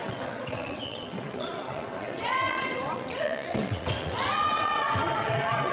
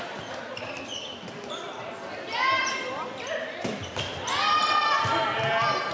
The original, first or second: second